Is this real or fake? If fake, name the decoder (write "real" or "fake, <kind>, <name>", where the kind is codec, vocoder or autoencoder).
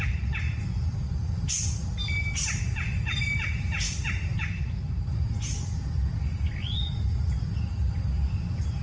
real